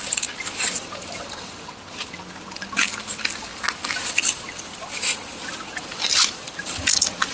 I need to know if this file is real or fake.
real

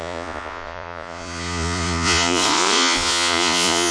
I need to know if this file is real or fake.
fake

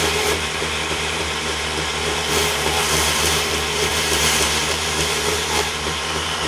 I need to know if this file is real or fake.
fake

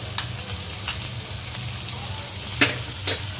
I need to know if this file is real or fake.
real